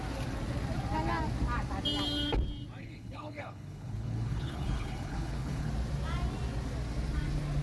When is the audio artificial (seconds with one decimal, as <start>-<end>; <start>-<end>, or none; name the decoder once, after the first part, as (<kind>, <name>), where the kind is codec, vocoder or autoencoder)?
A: 2.8-5.7 (codec, HILCodec)